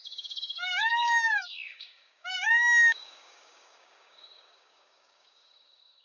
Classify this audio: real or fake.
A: fake